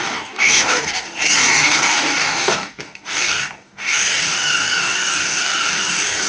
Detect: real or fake fake